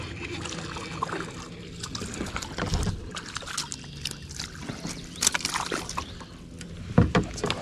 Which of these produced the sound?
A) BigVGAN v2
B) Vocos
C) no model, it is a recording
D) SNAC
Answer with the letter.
C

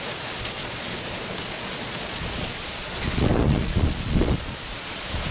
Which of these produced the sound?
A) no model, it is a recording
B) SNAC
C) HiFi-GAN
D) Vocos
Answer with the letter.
D